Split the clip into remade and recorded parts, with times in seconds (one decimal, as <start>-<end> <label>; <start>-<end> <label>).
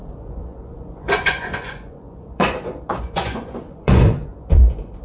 0.0-5.0 remade